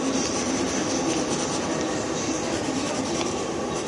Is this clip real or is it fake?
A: real